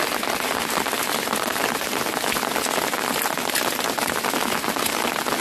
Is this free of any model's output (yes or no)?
yes